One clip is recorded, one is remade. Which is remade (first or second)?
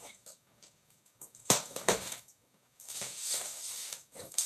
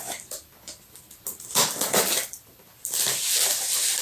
first